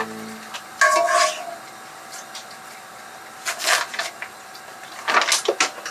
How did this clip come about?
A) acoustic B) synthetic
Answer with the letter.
A